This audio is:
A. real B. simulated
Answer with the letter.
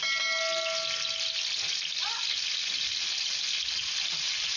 A